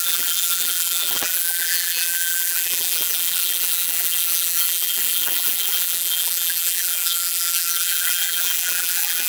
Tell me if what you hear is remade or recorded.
remade